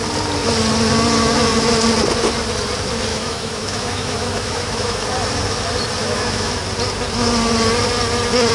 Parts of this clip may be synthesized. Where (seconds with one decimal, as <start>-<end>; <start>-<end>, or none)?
3.1-5.1; 6.0-6.5